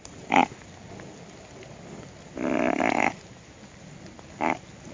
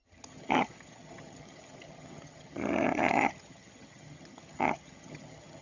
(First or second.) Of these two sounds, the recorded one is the first